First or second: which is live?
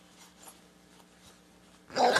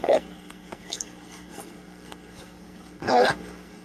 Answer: first